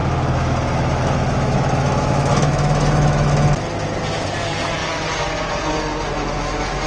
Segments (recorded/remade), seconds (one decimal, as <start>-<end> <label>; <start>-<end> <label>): 0.0-3.3 remade; 3.3-6.9 recorded